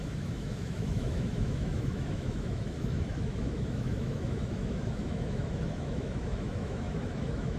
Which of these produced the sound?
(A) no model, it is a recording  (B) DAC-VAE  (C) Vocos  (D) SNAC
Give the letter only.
B